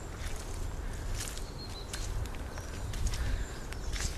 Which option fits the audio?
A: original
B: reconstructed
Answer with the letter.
A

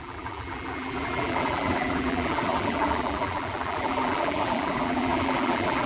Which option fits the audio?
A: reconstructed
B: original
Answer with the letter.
A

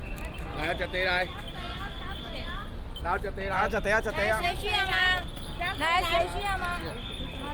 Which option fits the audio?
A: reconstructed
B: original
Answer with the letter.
B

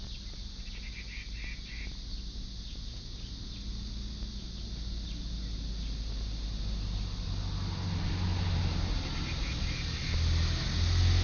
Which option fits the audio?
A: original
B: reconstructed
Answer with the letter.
A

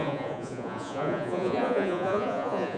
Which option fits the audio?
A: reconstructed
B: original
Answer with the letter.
A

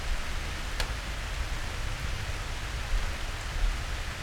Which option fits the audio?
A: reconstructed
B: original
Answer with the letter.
B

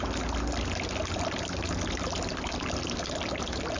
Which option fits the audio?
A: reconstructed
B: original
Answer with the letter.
B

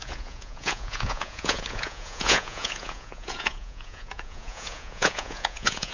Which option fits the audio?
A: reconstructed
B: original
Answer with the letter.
A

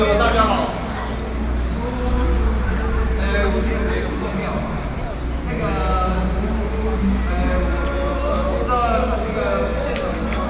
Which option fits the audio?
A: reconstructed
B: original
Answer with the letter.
B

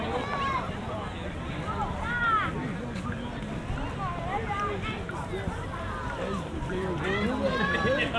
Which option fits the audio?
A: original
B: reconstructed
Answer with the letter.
A